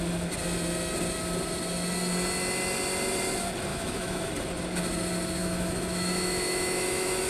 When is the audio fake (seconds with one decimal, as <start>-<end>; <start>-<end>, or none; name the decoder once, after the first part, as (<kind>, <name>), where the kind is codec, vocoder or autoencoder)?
3.7-4.3 (autoencoder, DAC-VAE); 5.4-7.3